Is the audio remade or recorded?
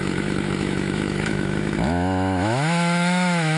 remade